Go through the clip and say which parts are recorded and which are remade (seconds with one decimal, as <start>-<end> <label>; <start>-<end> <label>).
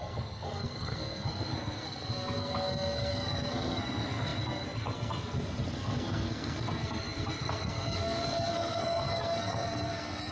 0.0-10.3 remade